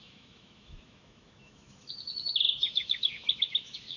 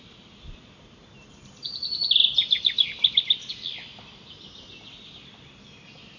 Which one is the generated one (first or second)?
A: first